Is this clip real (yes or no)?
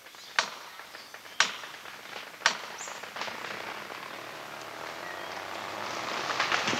yes